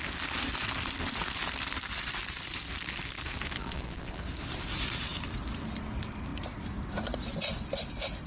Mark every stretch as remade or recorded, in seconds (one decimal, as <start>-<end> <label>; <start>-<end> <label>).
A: 0.0-3.6 recorded; 3.6-4.2 remade; 4.2-8.3 recorded